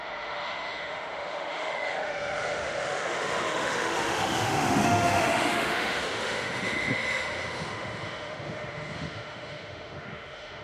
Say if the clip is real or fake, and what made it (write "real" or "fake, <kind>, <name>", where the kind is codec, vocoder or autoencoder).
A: fake, autoencoder, DAC-VAE